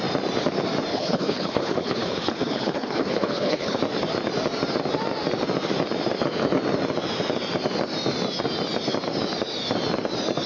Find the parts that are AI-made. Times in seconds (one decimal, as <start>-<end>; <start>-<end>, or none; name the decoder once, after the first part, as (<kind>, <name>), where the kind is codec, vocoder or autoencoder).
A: 0.9-3.8 (codec, HILCodec)